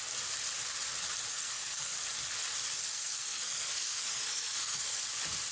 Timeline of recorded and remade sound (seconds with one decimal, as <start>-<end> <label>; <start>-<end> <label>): 0.0-1.3 recorded; 1.3-1.9 remade; 1.9-2.8 recorded; 2.8-5.0 remade; 5.0-5.5 recorded